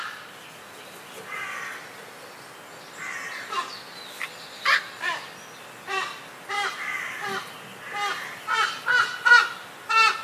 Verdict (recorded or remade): recorded